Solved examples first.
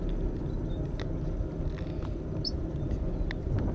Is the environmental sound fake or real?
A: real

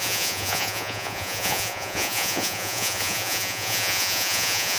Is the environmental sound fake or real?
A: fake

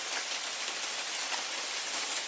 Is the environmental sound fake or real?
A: real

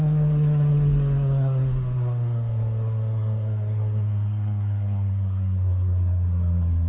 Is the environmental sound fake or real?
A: fake